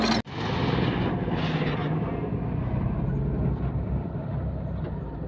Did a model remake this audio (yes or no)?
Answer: no